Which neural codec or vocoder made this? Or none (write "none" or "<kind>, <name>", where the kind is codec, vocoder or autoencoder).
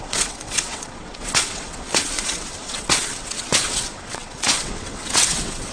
vocoder, WaveNeXt